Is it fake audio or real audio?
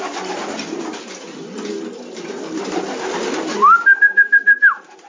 fake